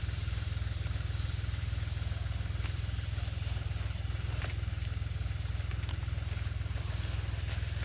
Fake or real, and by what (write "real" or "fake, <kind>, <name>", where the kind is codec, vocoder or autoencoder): real